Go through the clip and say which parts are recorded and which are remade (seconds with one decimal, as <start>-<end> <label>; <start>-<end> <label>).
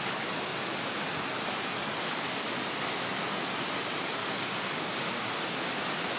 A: 0.0-4.2 recorded; 4.2-5.3 remade; 5.3-6.2 recorded